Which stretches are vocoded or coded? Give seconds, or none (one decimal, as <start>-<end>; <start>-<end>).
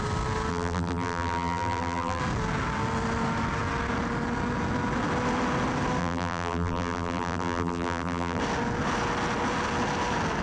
0.5-2.2; 6.0-8.4